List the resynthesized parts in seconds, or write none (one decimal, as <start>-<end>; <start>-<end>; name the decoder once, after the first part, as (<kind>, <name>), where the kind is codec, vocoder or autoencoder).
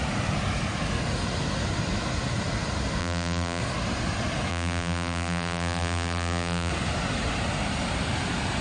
3.0-3.6 (vocoder, BigVGAN v2); 4.5-6.7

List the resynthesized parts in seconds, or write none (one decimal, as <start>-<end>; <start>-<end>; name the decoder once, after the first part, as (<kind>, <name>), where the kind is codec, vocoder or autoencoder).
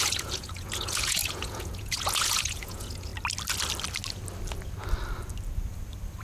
0.0-3.1 (vocoder, Vocos)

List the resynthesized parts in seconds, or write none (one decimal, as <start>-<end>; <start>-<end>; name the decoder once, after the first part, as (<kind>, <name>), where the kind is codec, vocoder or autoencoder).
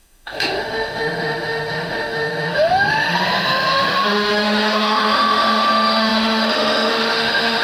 0.0-7.6 (autoencoder, DAC-VAE)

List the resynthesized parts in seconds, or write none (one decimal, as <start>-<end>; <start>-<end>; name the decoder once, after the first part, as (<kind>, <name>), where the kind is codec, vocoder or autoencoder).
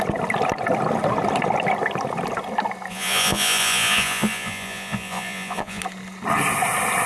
2.9-5.8 (vocoder, Vocos)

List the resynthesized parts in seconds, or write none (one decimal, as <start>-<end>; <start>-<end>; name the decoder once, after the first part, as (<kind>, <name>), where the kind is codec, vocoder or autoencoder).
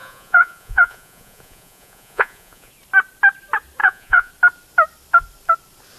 0.0-2.7 (vocoder, Vocos); 3.8-4.3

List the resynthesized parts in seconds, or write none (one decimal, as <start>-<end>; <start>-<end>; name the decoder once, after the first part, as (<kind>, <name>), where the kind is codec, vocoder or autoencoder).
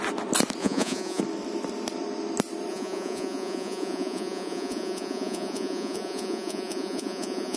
0.6-1.2 (vocoder, Vocos); 2.7-7.6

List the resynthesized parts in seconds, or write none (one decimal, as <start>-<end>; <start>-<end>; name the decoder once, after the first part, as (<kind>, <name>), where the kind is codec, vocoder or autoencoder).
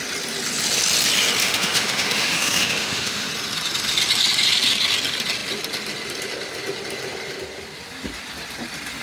1.4-3.3 (autoencoder, DAC-VAE)